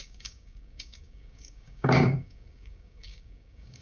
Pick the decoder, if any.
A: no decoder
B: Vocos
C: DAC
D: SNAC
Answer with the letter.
C